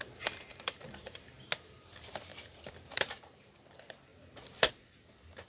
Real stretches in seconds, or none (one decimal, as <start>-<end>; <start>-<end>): 0.0-0.5; 1.2-2.3; 3.5-4.1; 4.7-5.5